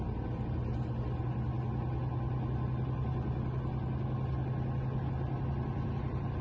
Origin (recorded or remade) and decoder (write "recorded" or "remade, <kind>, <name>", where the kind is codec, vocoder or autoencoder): recorded